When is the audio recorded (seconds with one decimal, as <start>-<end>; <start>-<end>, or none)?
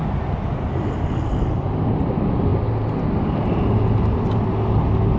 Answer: 0.0-5.2